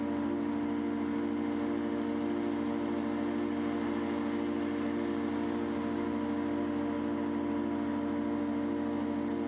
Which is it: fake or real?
real